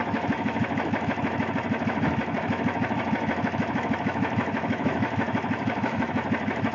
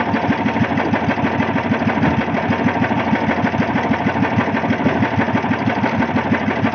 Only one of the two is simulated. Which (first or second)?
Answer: first